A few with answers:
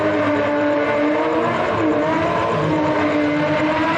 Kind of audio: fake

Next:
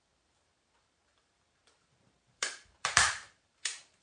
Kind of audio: fake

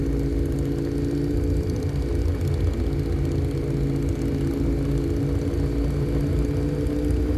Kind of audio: real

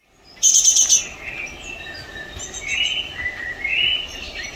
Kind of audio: real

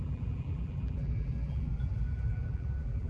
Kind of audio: fake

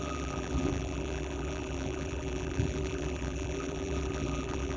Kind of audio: fake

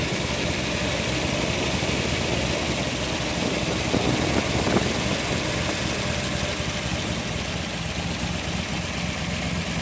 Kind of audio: real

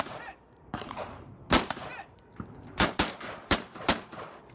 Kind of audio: fake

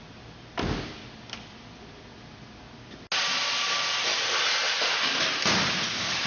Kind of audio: real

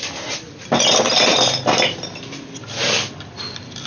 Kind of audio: fake